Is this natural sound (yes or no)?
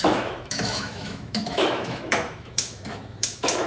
no